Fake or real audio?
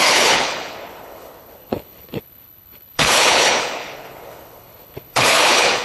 fake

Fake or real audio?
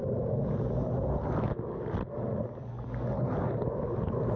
real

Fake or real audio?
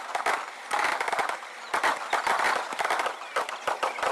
real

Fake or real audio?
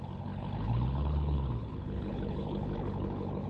fake